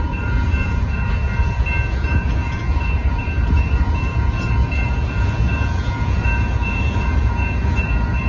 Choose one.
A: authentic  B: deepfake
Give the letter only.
B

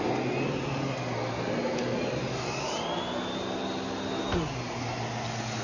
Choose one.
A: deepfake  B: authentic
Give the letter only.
B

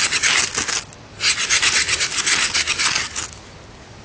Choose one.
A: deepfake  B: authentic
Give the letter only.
B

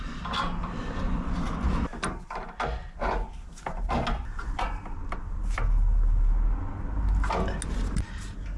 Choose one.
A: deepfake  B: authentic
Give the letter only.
B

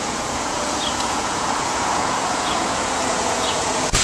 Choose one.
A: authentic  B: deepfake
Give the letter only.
B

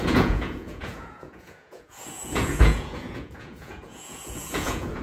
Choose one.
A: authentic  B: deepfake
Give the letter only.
B